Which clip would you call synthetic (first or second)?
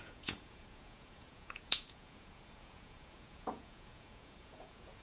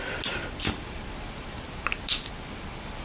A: first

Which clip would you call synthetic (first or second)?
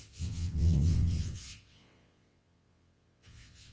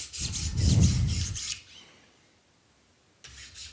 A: first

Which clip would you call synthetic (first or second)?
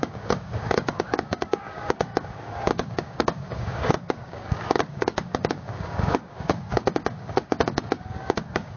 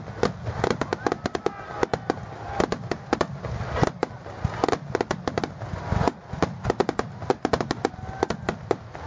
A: first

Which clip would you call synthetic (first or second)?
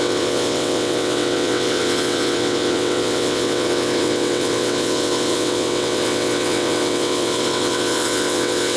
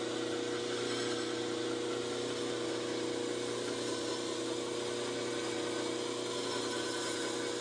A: first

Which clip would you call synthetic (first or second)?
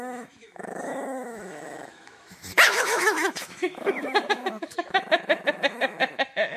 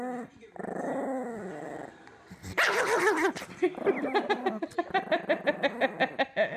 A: first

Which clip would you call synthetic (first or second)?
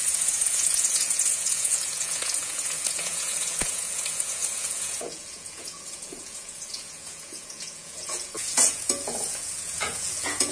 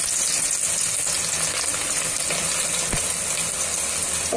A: first